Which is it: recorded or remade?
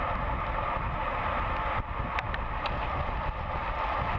recorded